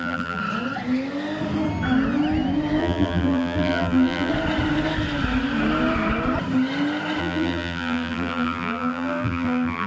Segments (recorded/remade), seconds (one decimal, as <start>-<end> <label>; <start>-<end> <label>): 0.0-0.4 remade; 0.4-2.8 recorded; 2.8-4.3 remade; 4.3-7.2 recorded; 7.2-9.9 remade